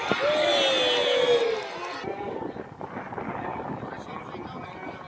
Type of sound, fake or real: real